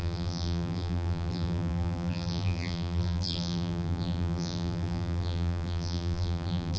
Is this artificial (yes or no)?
yes